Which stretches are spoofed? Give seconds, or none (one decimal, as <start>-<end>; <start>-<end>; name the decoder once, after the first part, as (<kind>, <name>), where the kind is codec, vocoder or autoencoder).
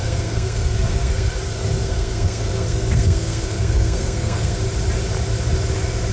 0.0-1.3 (codec, SNAC); 1.8-4.6